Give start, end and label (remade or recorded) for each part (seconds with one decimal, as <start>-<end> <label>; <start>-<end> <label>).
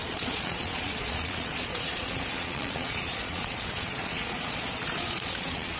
0.0-5.8 remade